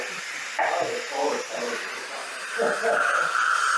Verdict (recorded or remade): recorded